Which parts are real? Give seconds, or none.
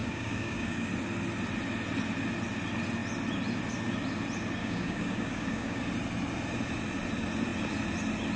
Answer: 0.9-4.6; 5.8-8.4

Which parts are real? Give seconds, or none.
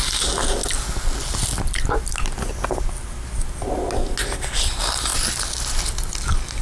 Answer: 0.0-6.6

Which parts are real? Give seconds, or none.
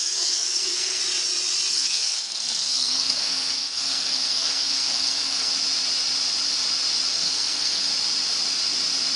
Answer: 1.0-1.7; 5.5-7.1; 7.9-9.2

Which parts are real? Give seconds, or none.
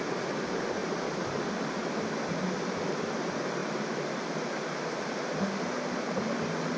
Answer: 0.0-3.6; 4.4-6.8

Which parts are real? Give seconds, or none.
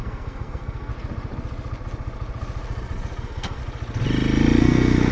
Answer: 0.9-3.2; 3.6-4.6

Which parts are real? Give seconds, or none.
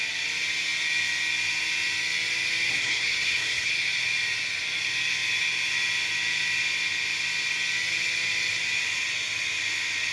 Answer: 0.0-2.7; 3.7-10.1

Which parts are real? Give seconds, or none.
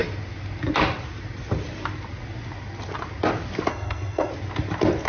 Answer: 0.0-3.7; 4.3-5.1